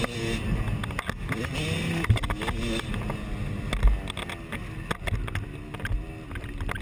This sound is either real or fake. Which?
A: real